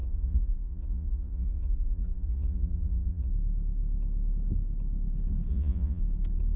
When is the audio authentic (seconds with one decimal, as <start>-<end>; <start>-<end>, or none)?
3.3-5.5; 6.0-6.6